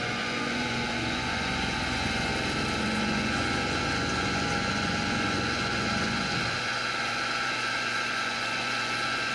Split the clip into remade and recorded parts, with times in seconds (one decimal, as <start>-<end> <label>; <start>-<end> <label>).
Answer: 0.0-2.3 remade; 2.3-2.8 recorded; 2.8-9.3 remade